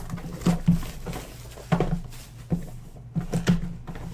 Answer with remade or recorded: recorded